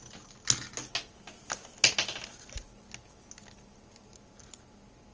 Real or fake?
real